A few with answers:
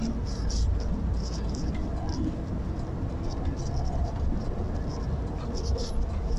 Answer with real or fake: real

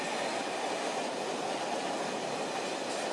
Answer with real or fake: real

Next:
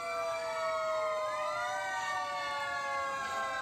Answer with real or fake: real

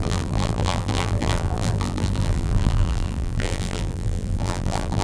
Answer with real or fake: fake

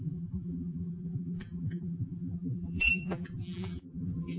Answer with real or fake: fake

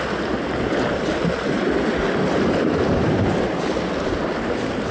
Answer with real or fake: real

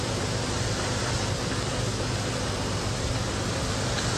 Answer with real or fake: real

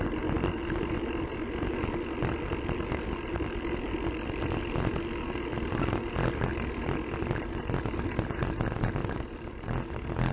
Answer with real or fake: real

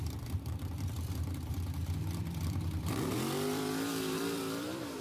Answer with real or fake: fake